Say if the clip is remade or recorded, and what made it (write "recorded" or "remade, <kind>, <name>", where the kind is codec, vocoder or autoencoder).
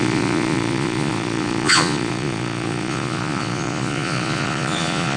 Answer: remade, vocoder, Vocos